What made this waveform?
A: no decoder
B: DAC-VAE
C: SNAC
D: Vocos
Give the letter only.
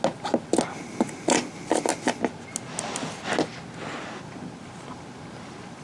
A